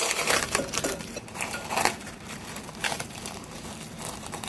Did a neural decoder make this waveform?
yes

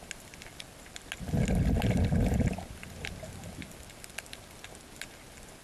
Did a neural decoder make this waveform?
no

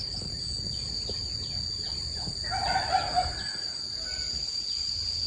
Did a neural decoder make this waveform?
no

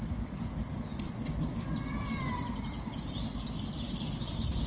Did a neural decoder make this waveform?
no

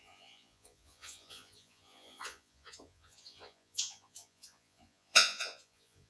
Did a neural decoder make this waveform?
yes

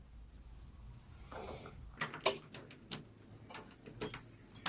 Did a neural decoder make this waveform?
no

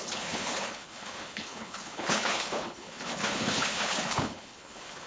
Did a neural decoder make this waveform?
yes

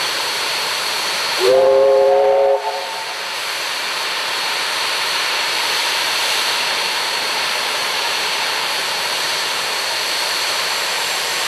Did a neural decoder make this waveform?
yes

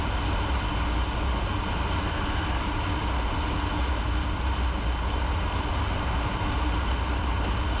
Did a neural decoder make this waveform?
no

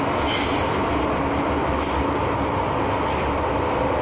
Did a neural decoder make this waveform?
no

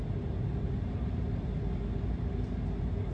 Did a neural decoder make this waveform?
no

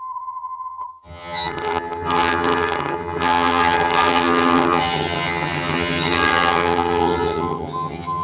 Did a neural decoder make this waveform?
yes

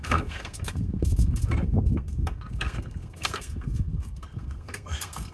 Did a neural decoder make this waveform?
yes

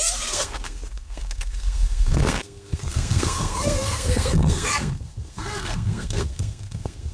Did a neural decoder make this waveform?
yes